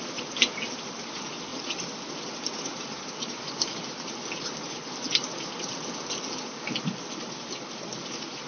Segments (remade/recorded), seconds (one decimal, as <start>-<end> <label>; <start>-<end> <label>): 0.0-8.5 recorded